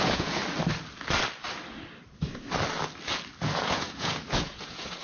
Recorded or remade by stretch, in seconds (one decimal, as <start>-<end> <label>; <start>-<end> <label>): 0.0-0.4 remade; 0.4-3.4 recorded; 3.4-5.0 remade